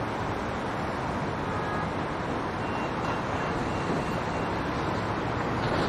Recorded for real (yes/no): yes